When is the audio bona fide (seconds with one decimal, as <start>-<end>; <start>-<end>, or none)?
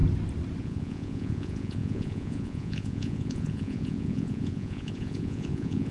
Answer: 0.0-0.6